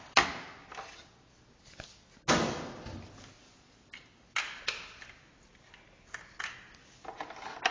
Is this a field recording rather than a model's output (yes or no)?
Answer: yes